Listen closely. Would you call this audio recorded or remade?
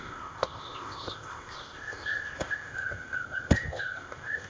remade